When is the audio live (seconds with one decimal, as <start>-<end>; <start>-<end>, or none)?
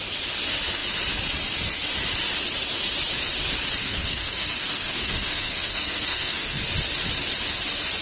0.0-3.8; 6.6-8.0